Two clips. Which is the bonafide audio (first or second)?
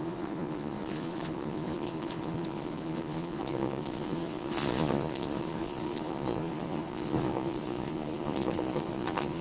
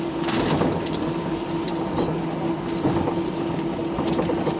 second